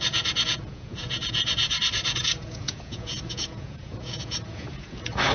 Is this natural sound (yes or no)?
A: no